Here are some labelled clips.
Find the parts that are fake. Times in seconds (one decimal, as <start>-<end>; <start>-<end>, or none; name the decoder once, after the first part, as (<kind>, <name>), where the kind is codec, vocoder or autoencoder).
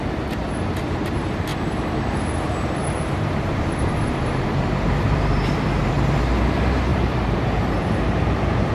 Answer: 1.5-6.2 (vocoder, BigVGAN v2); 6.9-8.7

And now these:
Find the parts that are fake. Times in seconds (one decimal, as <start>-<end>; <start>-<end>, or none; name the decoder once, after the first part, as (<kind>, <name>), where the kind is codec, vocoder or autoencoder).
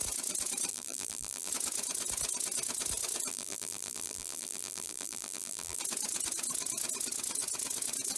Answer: 0.7-1.5 (vocoder, BigVGAN v2); 3.3-5.8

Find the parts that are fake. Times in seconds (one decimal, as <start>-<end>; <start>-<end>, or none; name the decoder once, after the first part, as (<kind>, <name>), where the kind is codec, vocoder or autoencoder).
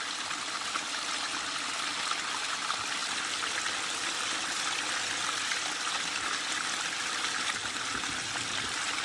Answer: 3.0-5.0 (vocoder, BigVGAN v2)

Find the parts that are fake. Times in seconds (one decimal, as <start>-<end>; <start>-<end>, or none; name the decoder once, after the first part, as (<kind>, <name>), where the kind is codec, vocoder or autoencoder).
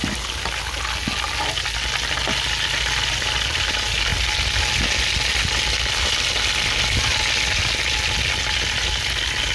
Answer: none